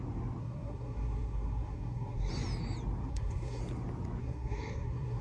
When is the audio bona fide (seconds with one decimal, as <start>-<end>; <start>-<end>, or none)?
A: 0.0-0.4; 2.3-3.1; 3.6-4.2